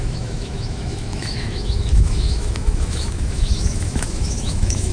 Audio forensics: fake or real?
fake